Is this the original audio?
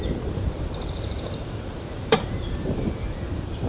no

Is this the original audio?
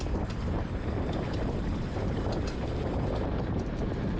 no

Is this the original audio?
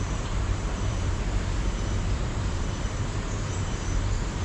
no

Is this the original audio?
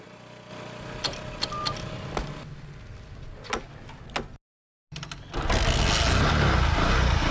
yes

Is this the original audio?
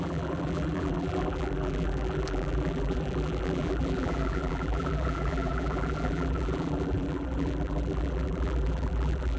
no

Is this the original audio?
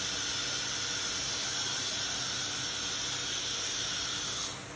yes